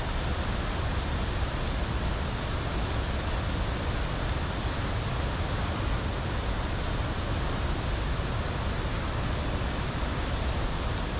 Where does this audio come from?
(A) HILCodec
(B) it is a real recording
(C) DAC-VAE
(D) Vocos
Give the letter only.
B